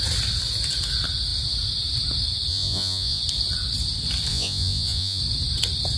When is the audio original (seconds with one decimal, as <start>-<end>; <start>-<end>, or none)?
0.0-2.5; 3.2-4.3; 5.2-6.0